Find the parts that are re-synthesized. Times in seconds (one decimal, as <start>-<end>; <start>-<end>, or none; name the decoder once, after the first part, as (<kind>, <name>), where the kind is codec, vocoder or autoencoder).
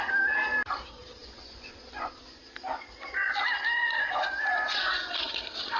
1.2-2.4 (vocoder, Vocos); 3.8-5.2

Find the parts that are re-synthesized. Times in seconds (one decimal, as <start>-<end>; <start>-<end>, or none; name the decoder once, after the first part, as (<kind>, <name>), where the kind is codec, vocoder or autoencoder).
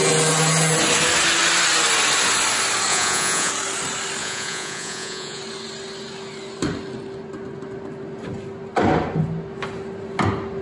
2.9-3.5 (vocoder, Vocos); 4.2-5.4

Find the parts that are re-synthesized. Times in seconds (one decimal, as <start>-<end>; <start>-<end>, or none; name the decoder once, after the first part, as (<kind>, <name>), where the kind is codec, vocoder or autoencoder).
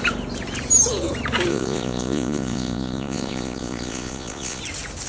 1.5-4.6 (vocoder, Vocos)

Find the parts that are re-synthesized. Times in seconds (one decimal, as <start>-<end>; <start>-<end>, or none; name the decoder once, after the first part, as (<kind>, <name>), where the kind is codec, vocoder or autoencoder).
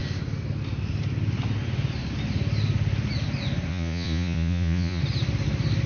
3.7-5.0 (vocoder, Vocos)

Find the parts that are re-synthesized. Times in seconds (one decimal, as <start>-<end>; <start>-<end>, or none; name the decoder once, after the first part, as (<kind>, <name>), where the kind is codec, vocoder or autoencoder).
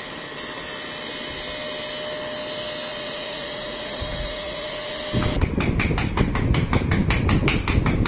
2.9-5.0 (vocoder, Vocos)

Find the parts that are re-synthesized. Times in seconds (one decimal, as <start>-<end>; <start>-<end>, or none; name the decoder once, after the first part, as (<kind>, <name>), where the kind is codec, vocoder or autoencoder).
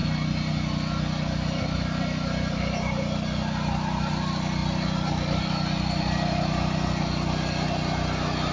none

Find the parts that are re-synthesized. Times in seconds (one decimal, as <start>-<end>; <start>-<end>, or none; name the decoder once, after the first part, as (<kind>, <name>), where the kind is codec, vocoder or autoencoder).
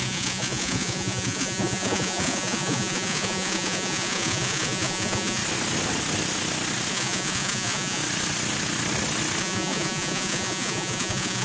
0.0-5.4 (vocoder, Vocos); 6.9-8.0; 9.4-11.4